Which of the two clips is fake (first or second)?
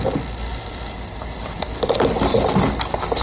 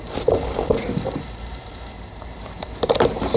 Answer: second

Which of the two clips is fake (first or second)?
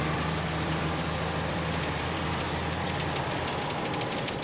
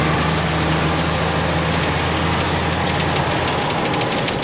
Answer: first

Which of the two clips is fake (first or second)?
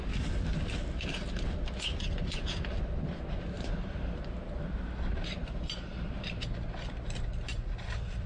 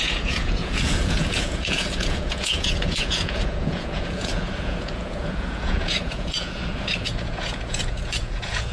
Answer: second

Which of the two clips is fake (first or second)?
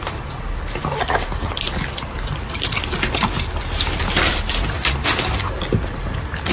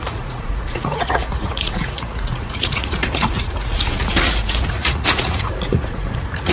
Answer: second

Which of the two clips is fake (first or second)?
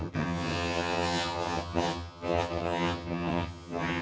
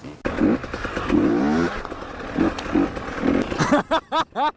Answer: first